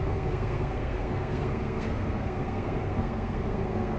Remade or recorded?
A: remade